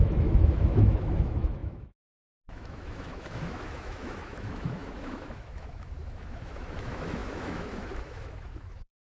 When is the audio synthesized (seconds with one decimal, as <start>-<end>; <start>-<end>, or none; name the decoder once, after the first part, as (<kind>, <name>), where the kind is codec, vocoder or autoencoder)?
0.0-9.1 (autoencoder, DAC-VAE)